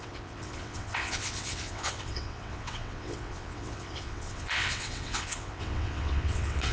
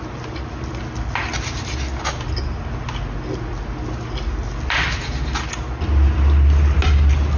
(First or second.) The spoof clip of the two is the first